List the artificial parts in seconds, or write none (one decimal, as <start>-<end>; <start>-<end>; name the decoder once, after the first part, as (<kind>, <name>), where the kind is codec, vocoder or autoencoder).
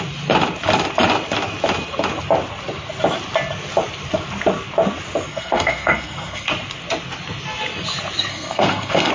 5.3-6.5 (codec, SNAC); 8.3-9.1